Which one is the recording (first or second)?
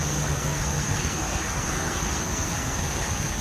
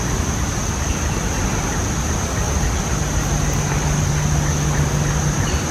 second